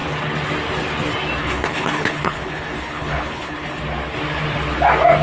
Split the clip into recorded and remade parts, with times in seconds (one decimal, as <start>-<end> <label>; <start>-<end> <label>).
0.0-1.4 recorded; 1.4-3.8 remade; 3.8-5.2 recorded